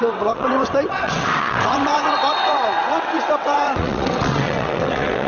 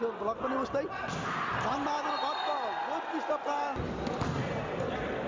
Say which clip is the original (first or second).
second